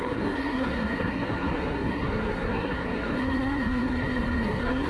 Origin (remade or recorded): remade